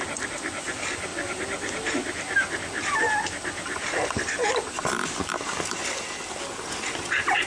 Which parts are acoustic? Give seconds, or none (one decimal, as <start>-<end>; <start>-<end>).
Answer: 0.0-7.5